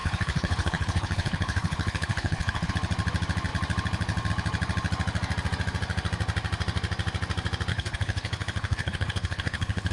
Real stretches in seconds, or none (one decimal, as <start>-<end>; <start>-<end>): 2.7-7.7